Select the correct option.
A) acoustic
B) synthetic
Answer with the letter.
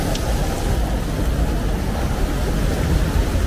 A